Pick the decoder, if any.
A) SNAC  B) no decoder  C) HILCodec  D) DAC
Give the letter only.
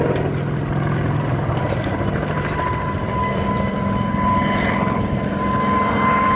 B